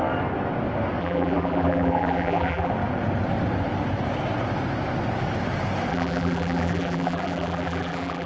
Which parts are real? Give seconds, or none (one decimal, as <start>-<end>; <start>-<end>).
0.0-1.0; 2.7-5.9